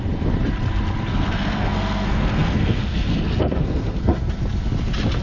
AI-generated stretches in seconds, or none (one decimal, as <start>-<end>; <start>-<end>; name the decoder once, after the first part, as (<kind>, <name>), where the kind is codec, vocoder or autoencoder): 1.1-4.2 (codec, SNAC)